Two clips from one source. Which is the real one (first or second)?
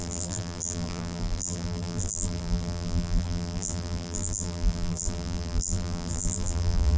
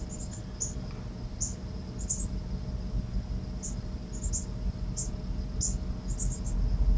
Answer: second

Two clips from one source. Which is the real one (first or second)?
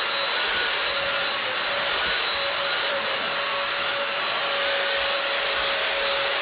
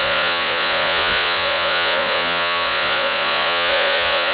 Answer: first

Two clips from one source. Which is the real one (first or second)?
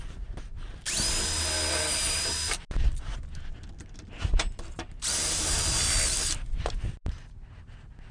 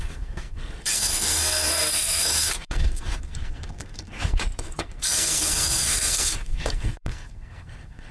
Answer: first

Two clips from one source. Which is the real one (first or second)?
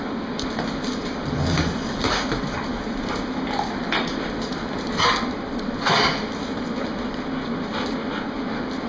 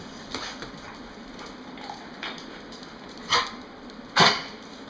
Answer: first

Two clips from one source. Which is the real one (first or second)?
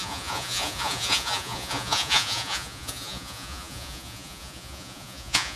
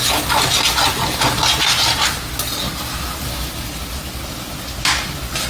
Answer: second